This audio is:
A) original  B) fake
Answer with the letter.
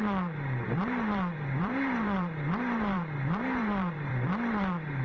B